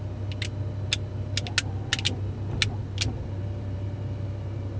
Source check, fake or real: real